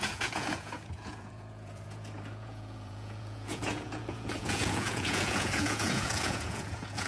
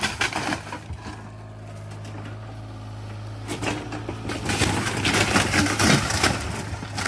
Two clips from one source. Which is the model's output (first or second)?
first